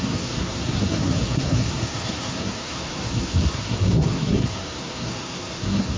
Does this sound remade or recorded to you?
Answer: remade